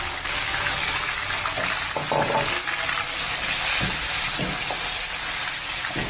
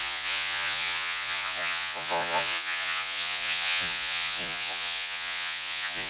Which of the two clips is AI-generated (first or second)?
second